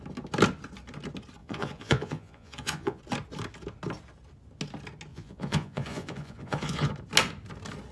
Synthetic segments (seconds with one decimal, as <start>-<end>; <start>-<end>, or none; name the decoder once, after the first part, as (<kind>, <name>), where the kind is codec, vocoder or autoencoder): 1.4-3.0 (vocoder, Vocos); 5.1-6.9